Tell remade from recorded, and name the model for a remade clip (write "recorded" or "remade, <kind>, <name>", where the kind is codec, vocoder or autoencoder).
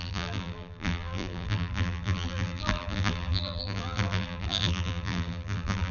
remade, vocoder, BigVGAN v2